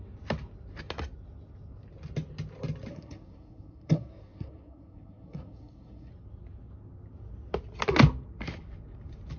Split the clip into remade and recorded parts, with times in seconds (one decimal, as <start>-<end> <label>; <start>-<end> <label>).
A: 0.0-2.9 recorded; 2.9-6.1 remade; 6.1-9.4 recorded